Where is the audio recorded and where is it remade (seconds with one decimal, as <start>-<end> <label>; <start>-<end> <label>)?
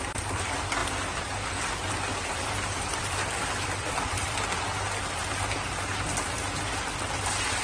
0.0-2.1 recorded; 2.1-4.5 remade; 4.5-7.6 recorded